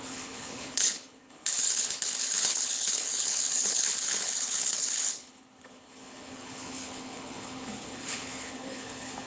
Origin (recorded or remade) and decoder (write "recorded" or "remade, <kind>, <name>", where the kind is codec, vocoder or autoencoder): remade, codec, HILCodec